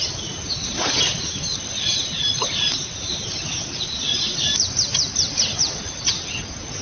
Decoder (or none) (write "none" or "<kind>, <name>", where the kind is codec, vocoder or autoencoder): none